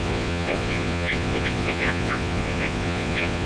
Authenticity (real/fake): fake